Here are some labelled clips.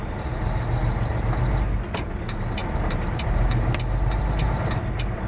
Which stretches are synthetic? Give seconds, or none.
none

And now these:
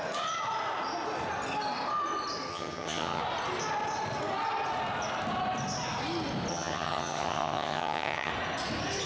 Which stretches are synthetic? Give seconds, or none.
2.5-3.2; 6.5-8.3

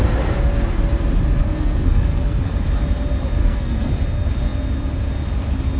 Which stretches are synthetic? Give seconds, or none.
1.4-2.5; 3.4-3.9

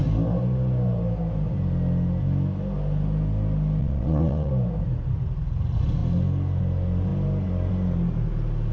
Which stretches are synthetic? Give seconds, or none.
3.8-4.5

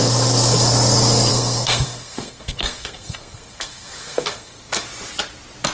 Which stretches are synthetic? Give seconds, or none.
1.3-4.7

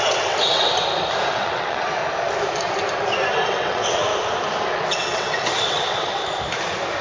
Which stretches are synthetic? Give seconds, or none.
0.0-0.7; 1.3-2.0; 3.5-4.1; 4.7-6.2

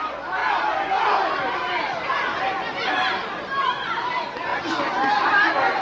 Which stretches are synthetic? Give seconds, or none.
0.0-4.5; 5.1-5.8

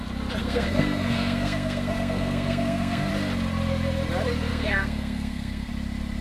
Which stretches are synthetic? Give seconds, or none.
0.4-3.1; 4.5-5.7